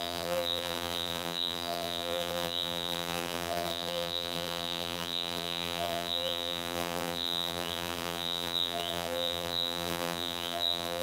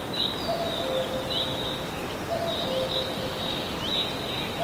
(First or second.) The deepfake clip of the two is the first